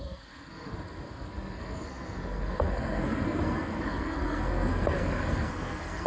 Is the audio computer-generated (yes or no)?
yes